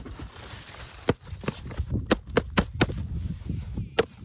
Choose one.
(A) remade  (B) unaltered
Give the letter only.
B